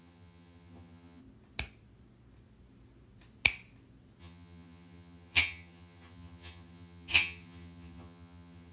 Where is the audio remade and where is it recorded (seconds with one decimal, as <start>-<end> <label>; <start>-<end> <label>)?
0.0-1.2 remade; 1.2-4.2 recorded; 4.2-8.7 remade